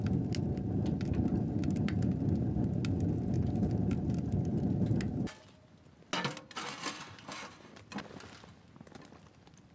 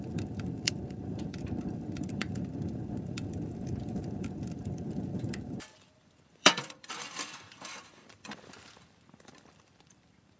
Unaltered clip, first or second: first